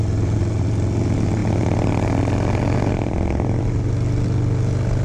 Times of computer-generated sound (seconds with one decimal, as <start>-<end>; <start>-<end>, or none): none